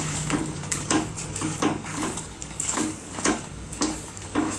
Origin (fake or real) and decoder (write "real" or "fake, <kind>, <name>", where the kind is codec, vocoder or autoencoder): fake, codec, DAC